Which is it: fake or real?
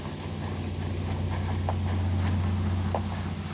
real